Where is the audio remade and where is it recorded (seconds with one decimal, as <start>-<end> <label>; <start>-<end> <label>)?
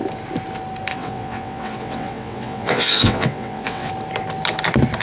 0.0-0.9 recorded; 0.9-3.9 remade; 3.9-5.0 recorded